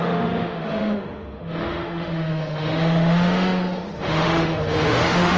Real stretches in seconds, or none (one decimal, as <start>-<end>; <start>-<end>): none